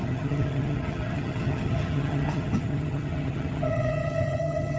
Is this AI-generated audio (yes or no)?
yes